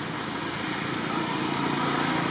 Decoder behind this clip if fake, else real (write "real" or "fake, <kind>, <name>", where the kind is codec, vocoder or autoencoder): real